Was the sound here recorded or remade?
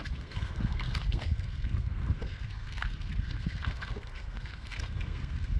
remade